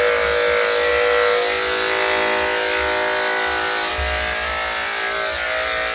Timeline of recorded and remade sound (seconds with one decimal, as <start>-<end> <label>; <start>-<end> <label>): 0.0-5.9 recorded